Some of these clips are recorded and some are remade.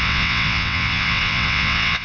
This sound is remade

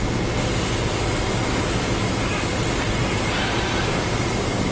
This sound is recorded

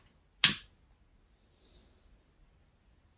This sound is recorded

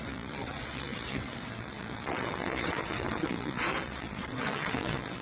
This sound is remade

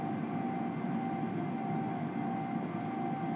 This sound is recorded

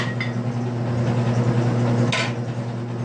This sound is recorded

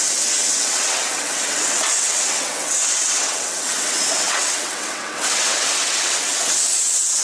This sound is remade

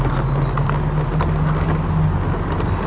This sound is recorded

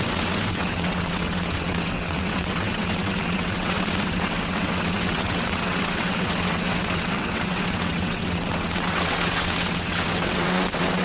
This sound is remade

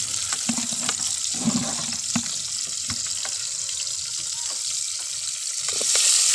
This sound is recorded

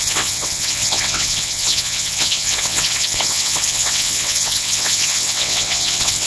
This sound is remade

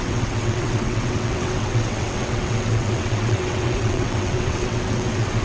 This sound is remade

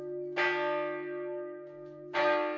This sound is recorded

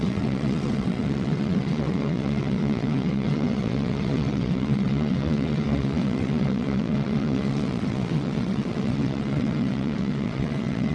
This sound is remade